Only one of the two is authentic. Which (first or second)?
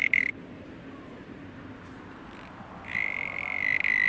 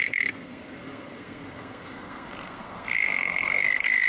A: first